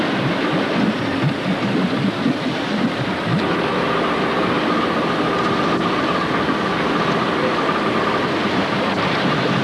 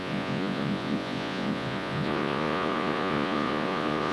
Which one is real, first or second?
first